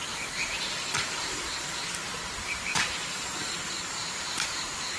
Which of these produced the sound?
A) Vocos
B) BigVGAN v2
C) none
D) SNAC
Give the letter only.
B